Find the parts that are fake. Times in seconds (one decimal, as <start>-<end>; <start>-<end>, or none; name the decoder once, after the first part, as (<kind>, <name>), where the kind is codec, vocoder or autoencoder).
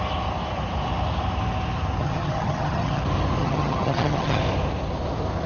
2.0-3.0 (vocoder, HiFi-GAN); 3.4-4.4